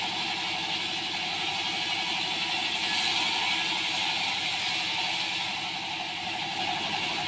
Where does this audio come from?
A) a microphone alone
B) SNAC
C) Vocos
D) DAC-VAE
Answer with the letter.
A